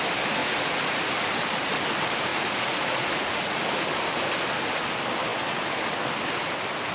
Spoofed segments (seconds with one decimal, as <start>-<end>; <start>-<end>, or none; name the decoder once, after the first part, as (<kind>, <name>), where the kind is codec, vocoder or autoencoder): 0.4-1.1 (vocoder, Vocos); 2.3-3.6